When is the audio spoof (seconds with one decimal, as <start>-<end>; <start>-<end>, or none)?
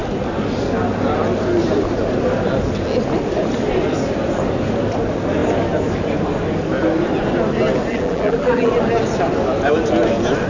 7.9-8.7